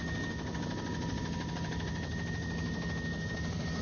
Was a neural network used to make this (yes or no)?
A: no